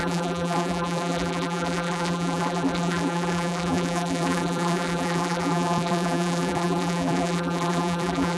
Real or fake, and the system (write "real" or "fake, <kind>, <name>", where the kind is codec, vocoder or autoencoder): fake, vocoder, BigVGAN v2